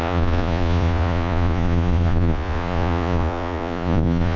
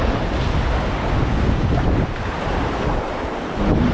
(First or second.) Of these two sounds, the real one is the second